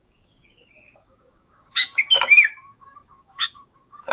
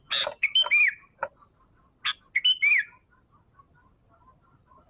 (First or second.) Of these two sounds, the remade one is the first